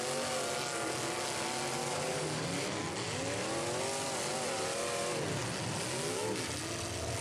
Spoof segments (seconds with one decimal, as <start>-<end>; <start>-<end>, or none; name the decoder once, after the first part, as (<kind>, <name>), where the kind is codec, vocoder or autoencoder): 1.8-2.4 (codec, DAC)